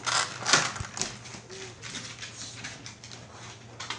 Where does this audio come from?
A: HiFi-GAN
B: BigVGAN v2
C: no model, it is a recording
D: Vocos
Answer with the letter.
C